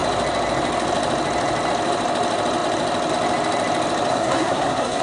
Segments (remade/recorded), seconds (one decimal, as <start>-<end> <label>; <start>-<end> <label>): 0.0-4.1 recorded; 4.1-5.0 remade